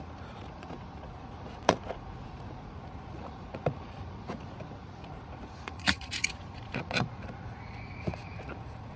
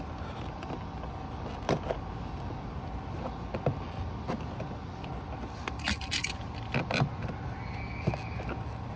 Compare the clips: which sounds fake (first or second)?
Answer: first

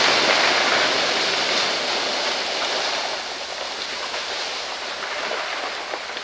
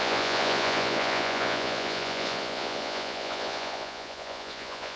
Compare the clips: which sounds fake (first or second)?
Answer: second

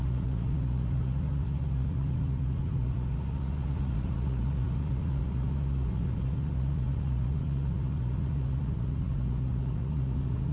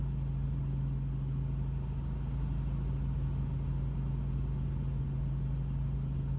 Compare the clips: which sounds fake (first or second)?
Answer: first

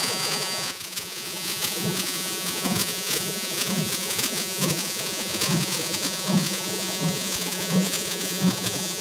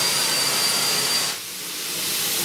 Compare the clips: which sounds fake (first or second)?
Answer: first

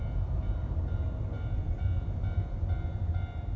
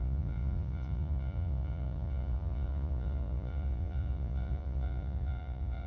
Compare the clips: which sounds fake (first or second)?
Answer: second